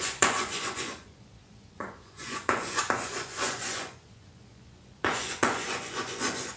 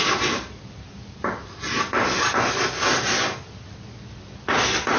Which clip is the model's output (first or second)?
first